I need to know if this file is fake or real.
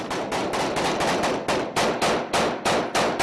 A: real